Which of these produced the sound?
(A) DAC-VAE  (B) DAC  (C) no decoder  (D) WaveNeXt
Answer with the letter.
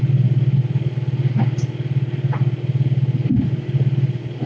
C